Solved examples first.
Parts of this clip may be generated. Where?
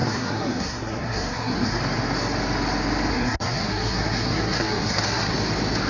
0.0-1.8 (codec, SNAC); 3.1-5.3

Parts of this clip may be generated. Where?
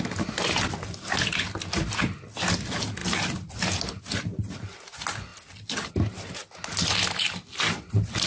none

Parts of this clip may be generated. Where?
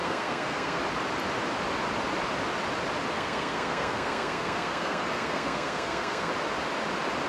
0.0-0.8 (codec, SNAC); 3.1-6.3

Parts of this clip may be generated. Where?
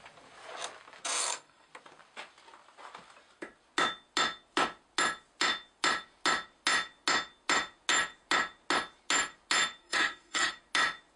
1.2-1.7 (codec, SNAC); 9.8-10.5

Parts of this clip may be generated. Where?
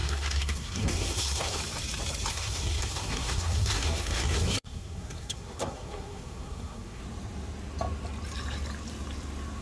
0.0-1.6 (codec, SNAC); 2.3-7.0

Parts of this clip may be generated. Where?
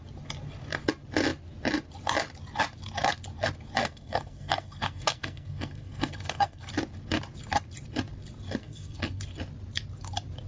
3.8-6.7 (codec, SNAC); 8.6-9.2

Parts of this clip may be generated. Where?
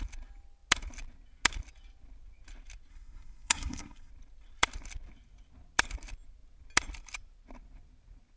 2.9-4.1 (codec, SNAC)